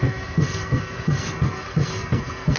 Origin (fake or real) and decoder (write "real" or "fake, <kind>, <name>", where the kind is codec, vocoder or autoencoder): fake, codec, SNAC